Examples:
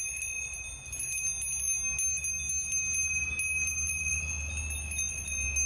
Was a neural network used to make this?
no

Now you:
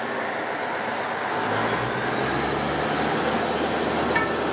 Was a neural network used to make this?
no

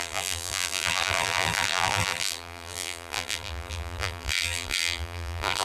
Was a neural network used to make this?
yes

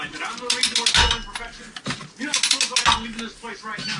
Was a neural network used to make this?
no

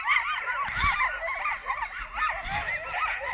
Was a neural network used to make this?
no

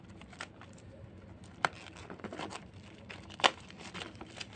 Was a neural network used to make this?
yes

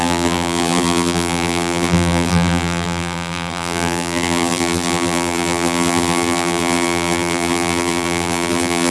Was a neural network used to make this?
yes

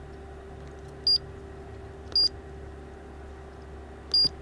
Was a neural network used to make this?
no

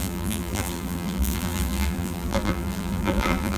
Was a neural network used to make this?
yes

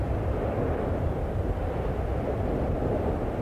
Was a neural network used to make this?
no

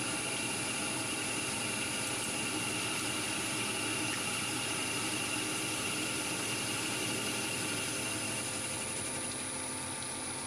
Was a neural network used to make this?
no